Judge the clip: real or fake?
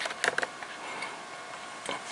real